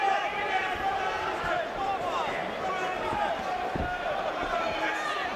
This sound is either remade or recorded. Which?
recorded